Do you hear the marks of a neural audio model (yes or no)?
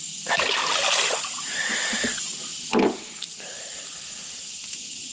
no